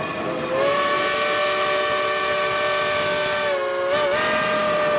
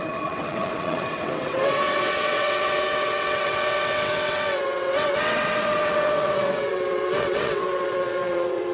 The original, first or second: first